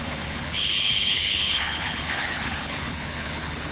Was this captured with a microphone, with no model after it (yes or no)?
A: no